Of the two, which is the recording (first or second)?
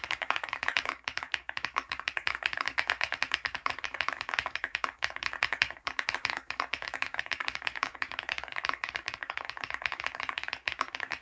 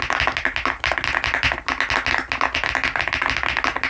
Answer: second